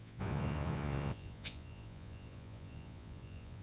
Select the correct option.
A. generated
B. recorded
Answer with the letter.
A